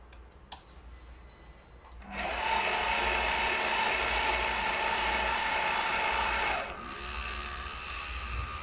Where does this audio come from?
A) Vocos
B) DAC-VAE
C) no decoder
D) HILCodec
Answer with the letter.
C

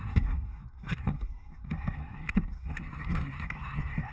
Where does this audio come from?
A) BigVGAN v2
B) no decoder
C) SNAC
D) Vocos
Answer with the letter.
C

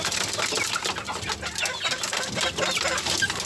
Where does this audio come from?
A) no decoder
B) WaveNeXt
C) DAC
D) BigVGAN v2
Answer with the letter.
A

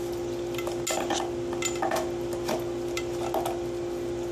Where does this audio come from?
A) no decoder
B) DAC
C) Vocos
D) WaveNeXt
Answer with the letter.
A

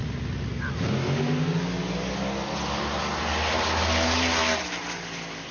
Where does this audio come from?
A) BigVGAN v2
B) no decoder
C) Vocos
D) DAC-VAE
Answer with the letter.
B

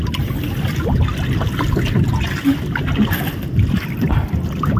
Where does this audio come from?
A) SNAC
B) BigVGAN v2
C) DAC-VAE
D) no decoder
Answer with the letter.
D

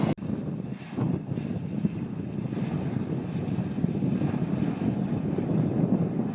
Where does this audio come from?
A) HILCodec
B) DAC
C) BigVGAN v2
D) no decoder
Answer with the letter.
D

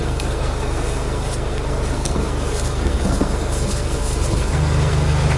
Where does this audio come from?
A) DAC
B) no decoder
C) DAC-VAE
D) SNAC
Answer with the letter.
D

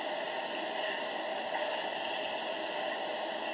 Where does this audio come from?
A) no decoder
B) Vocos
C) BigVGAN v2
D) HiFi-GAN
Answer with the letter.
A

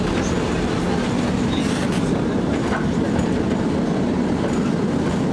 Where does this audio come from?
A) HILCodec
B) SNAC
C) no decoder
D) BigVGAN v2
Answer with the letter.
C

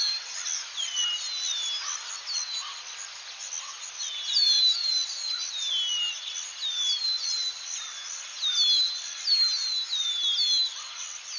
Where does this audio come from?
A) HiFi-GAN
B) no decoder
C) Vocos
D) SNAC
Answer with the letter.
B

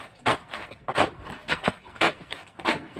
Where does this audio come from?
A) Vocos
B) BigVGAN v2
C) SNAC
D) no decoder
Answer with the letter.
C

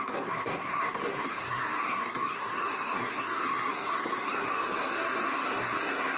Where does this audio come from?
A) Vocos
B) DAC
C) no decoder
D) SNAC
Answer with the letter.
D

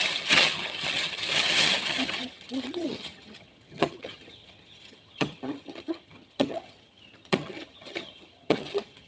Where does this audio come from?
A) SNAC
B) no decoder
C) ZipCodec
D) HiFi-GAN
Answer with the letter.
D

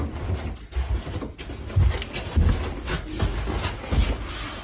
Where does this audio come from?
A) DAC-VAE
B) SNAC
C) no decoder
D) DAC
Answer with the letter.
C